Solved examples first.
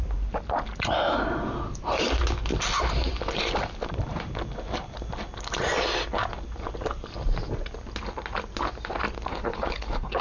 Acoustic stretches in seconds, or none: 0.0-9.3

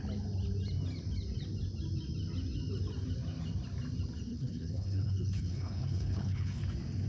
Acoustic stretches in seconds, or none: 0.0-4.3; 6.6-7.1

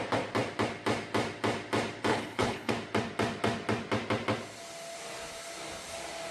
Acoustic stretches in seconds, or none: 0.0-2.1; 2.7-6.3

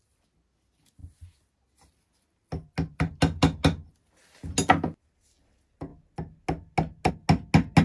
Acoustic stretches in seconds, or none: 0.0-7.8

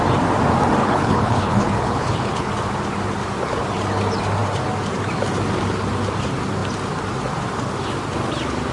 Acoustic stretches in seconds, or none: 0.0-0.8; 2.5-8.7

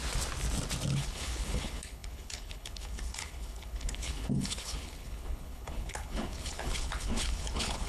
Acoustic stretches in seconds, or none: 0.0-0.9

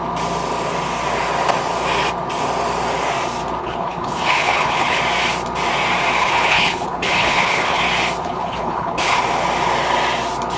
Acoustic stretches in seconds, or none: 0.0-3.6; 5.0-6.2; 7.8-8.2; 9.2-10.6